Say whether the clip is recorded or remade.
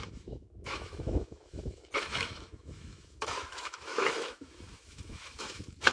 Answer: remade